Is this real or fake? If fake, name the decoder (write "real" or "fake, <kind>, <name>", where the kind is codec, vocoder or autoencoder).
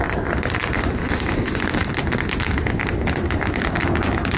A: real